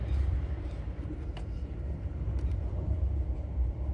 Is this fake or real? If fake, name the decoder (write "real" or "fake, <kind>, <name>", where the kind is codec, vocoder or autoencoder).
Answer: fake, vocoder, BigVGAN v2